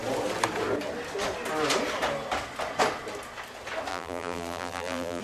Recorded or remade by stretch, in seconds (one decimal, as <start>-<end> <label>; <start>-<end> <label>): 0.0-3.9 recorded; 3.9-5.2 remade